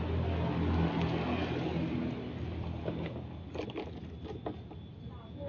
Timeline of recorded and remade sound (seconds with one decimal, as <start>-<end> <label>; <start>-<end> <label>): 0.0-5.5 recorded